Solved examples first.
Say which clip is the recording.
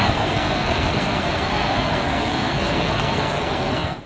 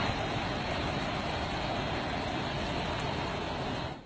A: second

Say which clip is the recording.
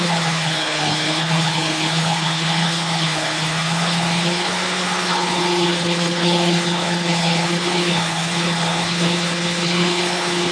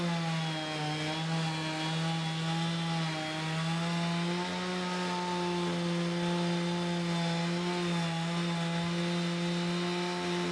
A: second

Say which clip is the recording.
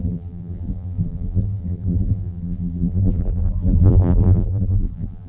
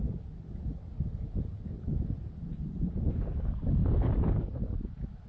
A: second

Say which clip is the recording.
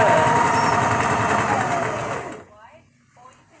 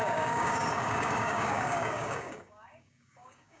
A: first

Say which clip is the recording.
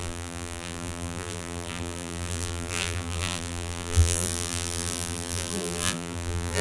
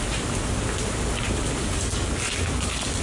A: second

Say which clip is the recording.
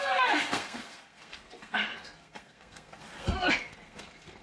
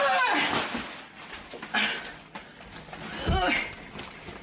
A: second